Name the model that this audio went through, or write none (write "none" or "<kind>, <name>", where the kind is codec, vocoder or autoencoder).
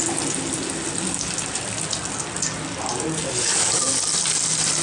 none